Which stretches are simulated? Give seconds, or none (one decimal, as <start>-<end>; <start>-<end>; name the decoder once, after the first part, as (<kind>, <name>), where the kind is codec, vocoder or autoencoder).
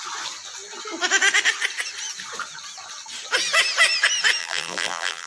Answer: 4.4-5.3 (vocoder, BigVGAN v2)